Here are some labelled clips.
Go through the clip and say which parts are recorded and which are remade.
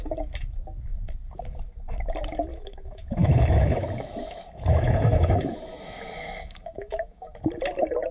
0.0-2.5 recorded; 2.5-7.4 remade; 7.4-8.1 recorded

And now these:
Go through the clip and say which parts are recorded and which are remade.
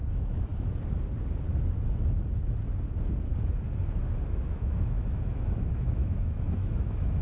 0.0-0.5 remade; 0.5-4.3 recorded; 4.3-7.2 remade